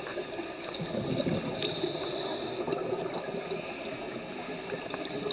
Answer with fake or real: real